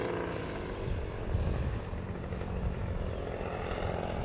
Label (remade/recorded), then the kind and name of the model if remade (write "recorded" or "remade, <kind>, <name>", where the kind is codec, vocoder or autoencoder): recorded